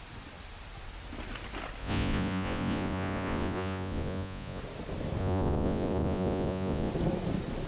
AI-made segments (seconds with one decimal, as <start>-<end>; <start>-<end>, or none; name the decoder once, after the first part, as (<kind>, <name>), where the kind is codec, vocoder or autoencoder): 1.8-4.6 (vocoder, Vocos); 5.2-6.9